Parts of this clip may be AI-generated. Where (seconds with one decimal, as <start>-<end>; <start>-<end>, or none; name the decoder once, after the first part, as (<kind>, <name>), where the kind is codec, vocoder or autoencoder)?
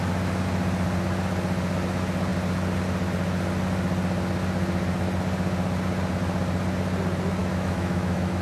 7.4-8.4 (autoencoder, DAC-VAE)